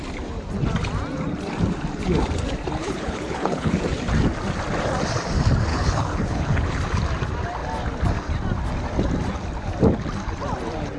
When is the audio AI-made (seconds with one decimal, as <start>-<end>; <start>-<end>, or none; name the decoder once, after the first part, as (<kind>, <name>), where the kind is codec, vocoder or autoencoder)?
2.8-3.8 (codec, HILCodec); 5.7-6.6